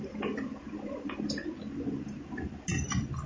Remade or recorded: recorded